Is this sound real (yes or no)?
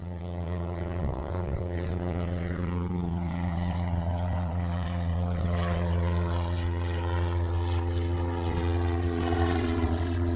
no